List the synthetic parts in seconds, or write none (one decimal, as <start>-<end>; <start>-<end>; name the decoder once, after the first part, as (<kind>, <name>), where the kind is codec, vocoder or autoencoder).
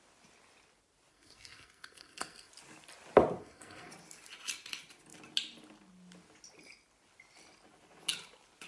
1.1-2.5 (codec, SNAC); 3.4-3.9